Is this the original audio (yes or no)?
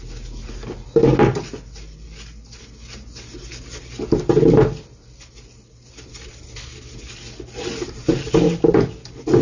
yes